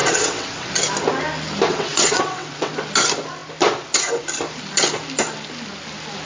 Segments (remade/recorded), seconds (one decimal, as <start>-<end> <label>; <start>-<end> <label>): 0.0-0.7 remade; 0.7-1.7 recorded; 1.7-2.7 remade; 2.7-6.3 recorded